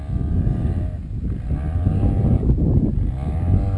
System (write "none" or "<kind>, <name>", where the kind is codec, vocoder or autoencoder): none